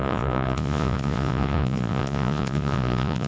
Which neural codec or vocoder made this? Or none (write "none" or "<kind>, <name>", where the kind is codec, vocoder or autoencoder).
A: vocoder, Vocos